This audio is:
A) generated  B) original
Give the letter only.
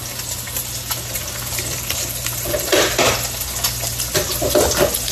B